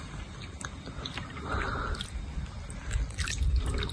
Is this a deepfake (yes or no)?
no